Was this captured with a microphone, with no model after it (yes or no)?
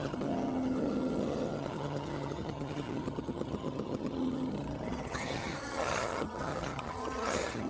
no